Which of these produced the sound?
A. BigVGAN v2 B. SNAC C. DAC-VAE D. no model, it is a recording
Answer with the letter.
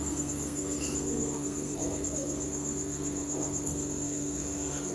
B